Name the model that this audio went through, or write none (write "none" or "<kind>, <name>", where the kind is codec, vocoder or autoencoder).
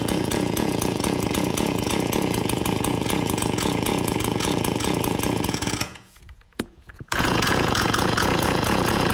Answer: vocoder, Vocos